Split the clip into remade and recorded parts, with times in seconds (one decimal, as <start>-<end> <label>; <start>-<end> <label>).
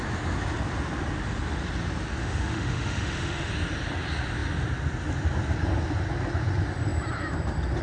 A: 0.0-2.2 recorded; 2.2-3.5 remade; 3.5-7.8 recorded